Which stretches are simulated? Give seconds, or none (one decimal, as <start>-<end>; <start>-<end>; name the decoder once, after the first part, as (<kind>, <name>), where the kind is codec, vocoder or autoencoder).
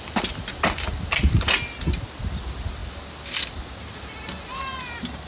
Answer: none